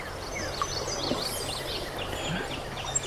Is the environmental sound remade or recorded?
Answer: recorded